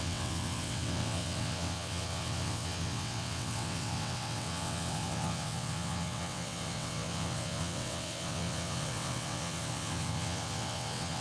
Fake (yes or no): yes